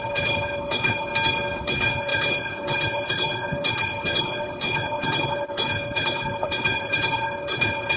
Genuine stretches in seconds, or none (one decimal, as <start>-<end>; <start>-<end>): 1.1-1.6

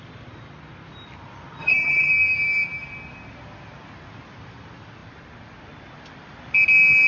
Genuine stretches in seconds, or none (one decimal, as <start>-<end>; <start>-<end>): 0.0-1.6; 2.1-7.1

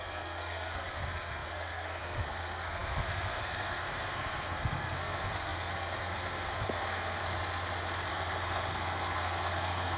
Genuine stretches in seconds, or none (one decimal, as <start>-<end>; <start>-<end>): 7.2-8.1

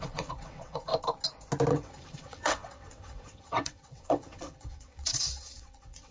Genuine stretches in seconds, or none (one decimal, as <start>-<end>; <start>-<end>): 0.9-1.7

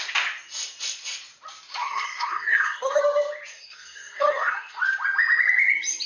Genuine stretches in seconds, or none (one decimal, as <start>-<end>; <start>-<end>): 0.0-1.8; 3.0-3.5; 4.8-6.1

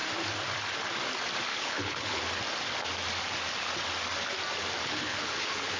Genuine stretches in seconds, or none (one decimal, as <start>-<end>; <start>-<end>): 0.0-1.5; 2.2-4.8

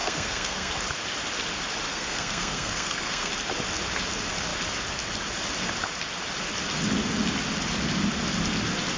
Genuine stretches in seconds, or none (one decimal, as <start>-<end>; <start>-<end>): 0.7-1.9; 3.3-9.0

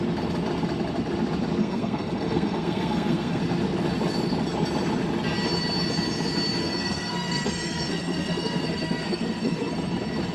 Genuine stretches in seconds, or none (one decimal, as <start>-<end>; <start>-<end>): 0.0-1.6; 3.4-6.6; 9.7-10.3